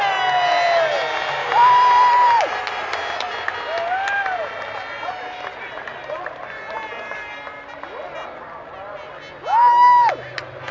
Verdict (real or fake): real